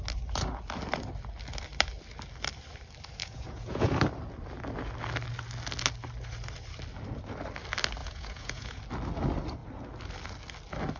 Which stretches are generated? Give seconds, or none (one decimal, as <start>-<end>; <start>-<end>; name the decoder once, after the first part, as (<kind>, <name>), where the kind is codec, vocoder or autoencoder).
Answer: 3.2-4.0 (vocoder, Vocos); 8.0-8.8